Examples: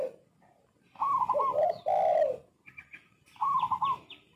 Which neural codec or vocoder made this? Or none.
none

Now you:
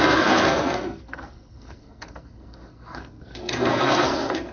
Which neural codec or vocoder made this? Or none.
codec, SNAC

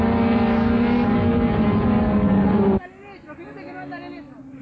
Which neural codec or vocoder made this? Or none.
none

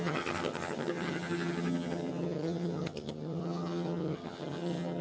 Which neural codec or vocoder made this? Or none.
vocoder, HiFi-GAN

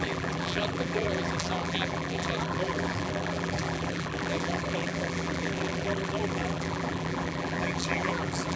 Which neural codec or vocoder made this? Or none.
vocoder, BigVGAN v2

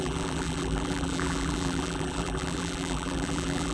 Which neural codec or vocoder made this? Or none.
vocoder, BigVGAN v2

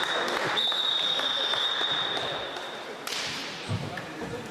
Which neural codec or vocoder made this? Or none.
vocoder, BigVGAN v2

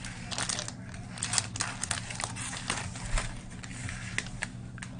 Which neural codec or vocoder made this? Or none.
none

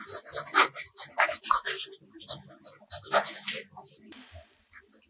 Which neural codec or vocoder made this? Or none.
none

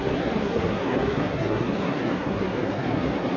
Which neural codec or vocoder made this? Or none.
codec, SNAC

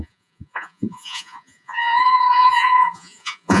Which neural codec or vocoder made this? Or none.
vocoder, Vocos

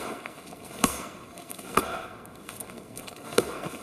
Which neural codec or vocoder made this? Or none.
codec, SNAC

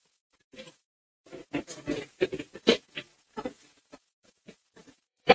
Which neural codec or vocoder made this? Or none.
vocoder, Vocos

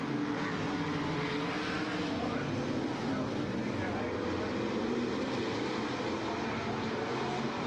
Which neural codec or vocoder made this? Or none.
none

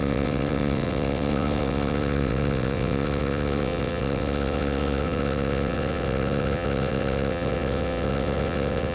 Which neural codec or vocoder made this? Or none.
vocoder, WaveNeXt